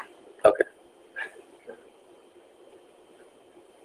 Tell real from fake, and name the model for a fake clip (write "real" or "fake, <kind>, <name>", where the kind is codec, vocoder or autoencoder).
real